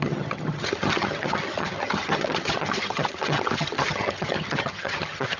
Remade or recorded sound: remade